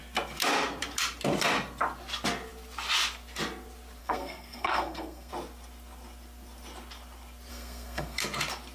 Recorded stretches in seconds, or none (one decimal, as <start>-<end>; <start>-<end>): 0.0-4.0; 5.3-7.5; 8.2-8.7